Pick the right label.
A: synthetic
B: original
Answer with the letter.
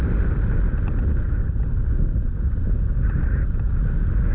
B